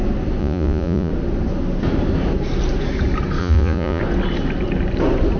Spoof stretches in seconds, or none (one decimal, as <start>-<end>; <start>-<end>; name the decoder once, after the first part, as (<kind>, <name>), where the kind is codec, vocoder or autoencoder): 0.4-1.1 (vocoder, Vocos); 3.4-4.0